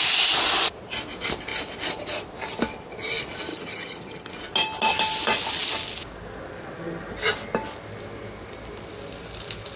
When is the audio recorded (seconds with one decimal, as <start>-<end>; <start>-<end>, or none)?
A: 0.0-3.5; 4.3-9.8